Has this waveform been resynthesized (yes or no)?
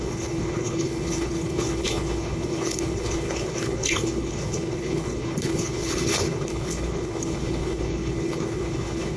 yes